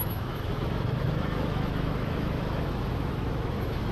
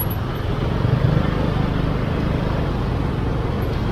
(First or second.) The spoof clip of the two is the first